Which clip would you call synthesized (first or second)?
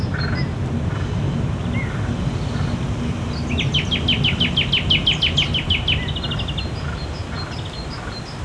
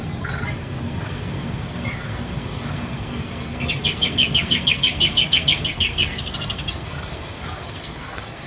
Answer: second